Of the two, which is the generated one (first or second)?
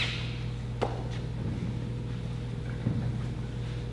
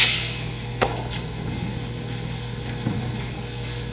second